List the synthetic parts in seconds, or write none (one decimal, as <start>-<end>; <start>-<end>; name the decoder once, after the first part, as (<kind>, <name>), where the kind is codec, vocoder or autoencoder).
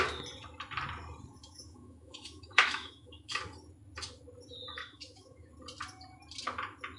1.4-3.4 (autoencoder, DAC-VAE); 4.8-5.5